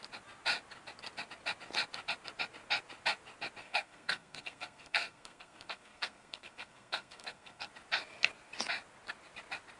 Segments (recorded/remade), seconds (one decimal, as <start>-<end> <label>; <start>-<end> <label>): 0.0-3.6 recorded; 3.6-7.7 remade; 7.7-9.8 recorded